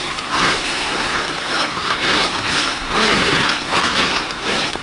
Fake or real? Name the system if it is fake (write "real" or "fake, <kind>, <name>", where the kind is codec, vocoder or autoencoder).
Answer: fake, codec, SNAC